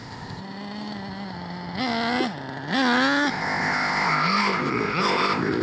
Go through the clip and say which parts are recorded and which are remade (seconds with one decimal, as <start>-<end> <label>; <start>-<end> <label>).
0.0-0.4 remade; 0.4-3.3 recorded; 3.3-5.6 remade